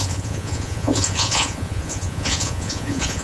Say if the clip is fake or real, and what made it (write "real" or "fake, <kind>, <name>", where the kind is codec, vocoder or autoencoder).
fake, vocoder, Vocos